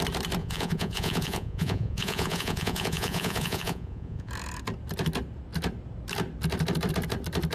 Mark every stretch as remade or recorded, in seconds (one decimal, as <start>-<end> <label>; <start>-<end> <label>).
0.0-0.4 recorded; 0.4-4.3 remade; 4.3-7.5 recorded